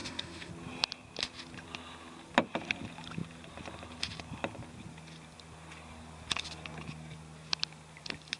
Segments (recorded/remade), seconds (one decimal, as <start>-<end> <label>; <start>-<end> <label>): 0.0-0.5 remade; 0.5-8.4 recorded